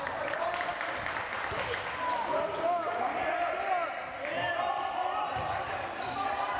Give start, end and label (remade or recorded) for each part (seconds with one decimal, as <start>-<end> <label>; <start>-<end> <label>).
0.0-6.6 recorded